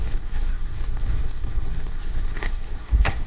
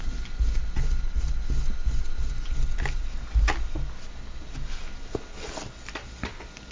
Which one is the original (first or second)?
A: second